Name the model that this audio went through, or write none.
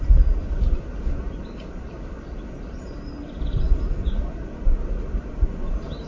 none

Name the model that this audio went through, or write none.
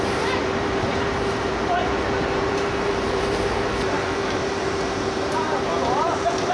vocoder, BigVGAN v2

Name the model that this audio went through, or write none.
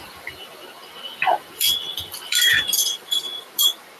vocoder, BigVGAN v2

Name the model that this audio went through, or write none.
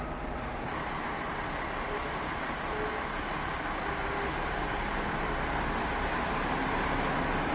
none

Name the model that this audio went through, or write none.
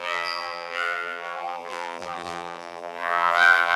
vocoder, BigVGAN v2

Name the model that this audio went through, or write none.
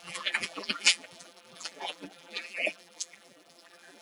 vocoder, BigVGAN v2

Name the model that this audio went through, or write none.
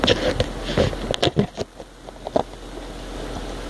none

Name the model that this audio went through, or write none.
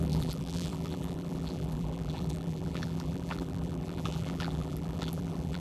vocoder, BigVGAN v2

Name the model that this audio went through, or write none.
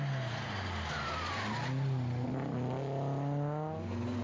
none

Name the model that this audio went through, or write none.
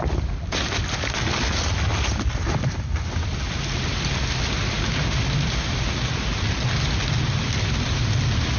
none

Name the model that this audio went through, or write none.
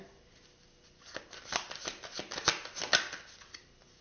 none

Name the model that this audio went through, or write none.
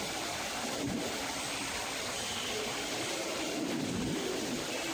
vocoder, BigVGAN v2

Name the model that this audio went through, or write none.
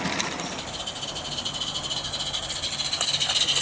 none